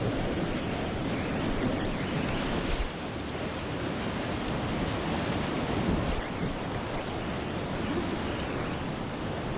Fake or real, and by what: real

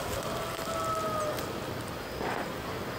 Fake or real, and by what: real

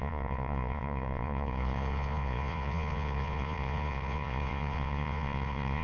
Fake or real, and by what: fake, vocoder, Vocos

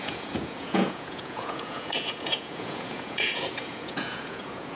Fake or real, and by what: fake, vocoder, Vocos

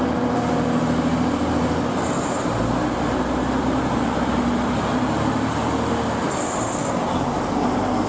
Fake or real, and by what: real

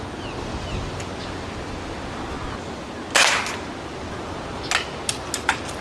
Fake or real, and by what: real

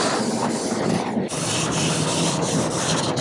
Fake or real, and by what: real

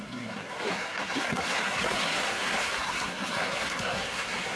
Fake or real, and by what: fake, codec, SNAC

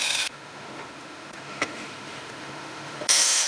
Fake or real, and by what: fake, autoencoder, DAC-VAE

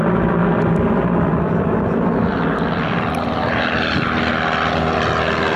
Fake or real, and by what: real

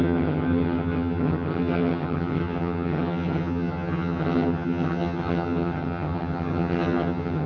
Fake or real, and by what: fake, vocoder, HiFi-GAN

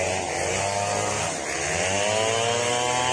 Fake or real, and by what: real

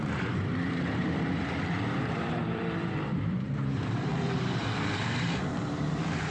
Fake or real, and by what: fake, vocoder, BigVGAN v2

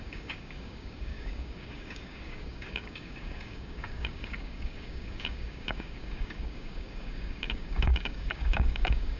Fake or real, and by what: fake, codec, DAC